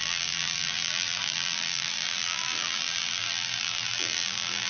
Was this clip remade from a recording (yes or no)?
yes